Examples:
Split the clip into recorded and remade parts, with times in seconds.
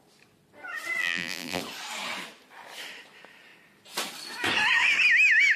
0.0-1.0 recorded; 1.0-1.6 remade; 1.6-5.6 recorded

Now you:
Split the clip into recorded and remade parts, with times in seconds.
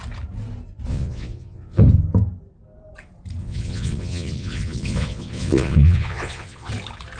0.0-0.9 recorded; 0.9-1.8 remade; 1.8-3.4 recorded; 3.4-6.7 remade; 6.7-7.2 recorded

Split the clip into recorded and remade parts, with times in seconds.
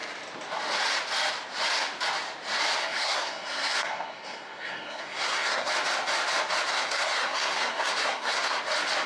0.0-2.8 recorded; 2.8-5.7 remade; 5.7-6.7 recorded; 6.7-8.6 remade; 8.6-9.1 recorded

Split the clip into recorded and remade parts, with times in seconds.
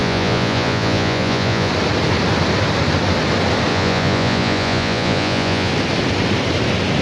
0.0-1.7 remade; 1.7-3.7 recorded; 3.7-5.7 remade; 5.7-7.0 recorded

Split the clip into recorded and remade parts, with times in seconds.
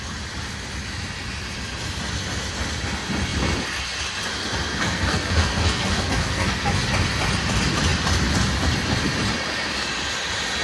0.0-4.7 recorded; 4.7-6.8 remade; 6.8-10.6 recorded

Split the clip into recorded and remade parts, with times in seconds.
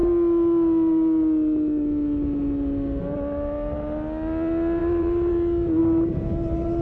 0.0-4.8 recorded; 4.8-5.3 remade; 5.3-5.8 recorded; 5.8-6.8 remade